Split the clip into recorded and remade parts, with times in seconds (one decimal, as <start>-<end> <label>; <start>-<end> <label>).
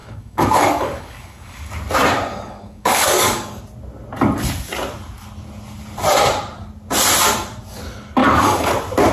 0.0-1.7 remade; 1.7-2.3 recorded; 2.3-3.6 remade; 3.6-8.2 recorded; 8.2-8.7 remade; 8.7-9.1 recorded